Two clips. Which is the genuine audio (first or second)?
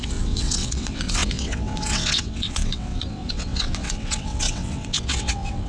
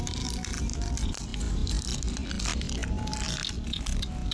second